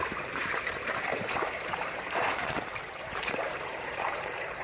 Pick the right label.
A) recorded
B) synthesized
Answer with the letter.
B